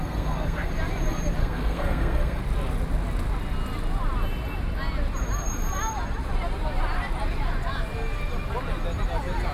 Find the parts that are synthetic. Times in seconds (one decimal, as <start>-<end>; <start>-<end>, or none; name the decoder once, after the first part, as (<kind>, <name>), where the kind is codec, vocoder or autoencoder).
0.0-0.7 (codec, SNAC); 1.4-2.4